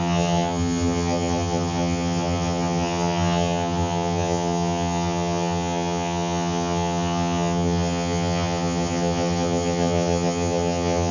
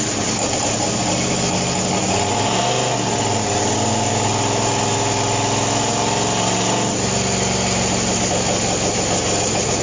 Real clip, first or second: second